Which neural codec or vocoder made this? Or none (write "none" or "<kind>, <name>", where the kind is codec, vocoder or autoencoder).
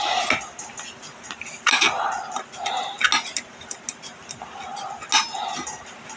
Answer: none